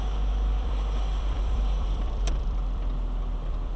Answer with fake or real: fake